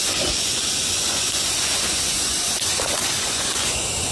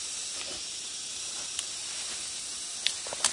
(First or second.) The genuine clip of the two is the second